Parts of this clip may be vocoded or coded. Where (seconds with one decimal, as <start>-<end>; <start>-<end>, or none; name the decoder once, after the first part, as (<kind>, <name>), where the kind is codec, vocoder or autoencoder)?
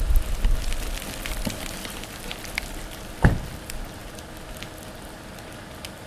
none